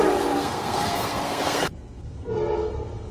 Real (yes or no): no